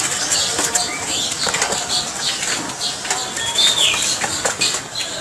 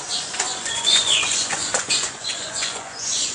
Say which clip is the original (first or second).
first